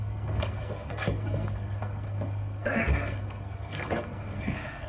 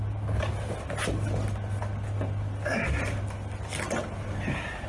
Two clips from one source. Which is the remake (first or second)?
first